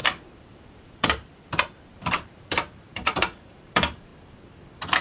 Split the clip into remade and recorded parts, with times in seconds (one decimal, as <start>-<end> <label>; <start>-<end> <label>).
0.0-4.1 remade; 4.1-5.0 recorded